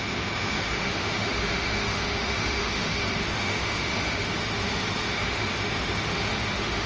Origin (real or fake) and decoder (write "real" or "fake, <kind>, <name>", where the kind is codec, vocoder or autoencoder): fake, autoencoder, DAC-VAE